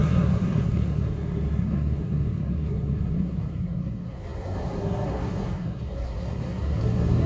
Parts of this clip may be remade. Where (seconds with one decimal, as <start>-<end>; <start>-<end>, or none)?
0.0-7.3